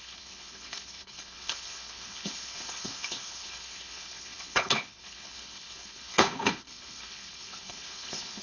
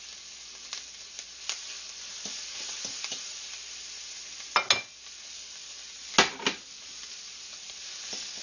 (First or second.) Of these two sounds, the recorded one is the second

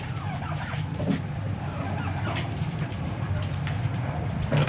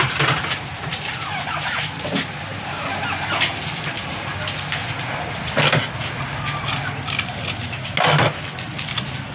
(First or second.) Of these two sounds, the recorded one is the second